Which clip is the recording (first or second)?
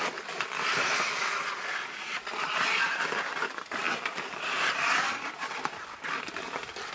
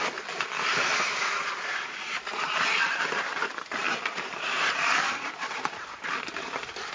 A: first